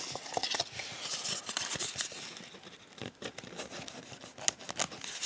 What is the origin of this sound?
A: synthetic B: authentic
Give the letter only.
B